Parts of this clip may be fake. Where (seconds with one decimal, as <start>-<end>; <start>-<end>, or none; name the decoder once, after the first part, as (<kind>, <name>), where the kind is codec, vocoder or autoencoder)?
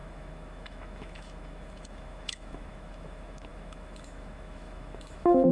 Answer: 0.0-5.5 (autoencoder, DAC-VAE)